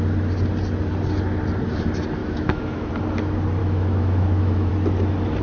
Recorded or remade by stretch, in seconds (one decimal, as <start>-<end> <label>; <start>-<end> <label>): 0.0-2.2 recorded; 2.2-2.9 remade; 2.9-3.6 recorded; 3.6-4.7 remade; 4.7-5.4 recorded